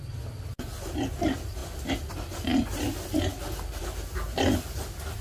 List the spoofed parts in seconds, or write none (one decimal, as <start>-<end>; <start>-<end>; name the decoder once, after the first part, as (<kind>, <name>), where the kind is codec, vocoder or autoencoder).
none